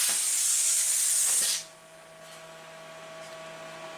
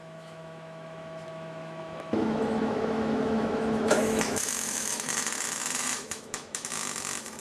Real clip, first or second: first